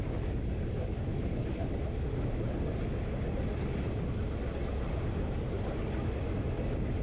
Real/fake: real